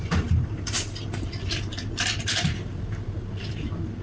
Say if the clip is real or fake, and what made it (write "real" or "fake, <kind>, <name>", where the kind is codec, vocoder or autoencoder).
real